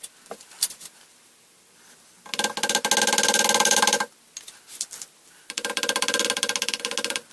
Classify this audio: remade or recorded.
recorded